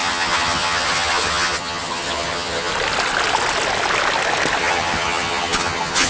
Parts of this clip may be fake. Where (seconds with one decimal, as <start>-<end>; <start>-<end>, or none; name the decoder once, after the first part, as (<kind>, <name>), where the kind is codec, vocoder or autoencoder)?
0.0-2.7 (vocoder, HiFi-GAN); 4.6-6.1